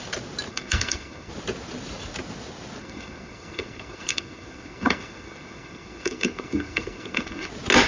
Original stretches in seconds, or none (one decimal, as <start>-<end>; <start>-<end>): 0.0-0.5; 1.3-2.8; 7.5-7.9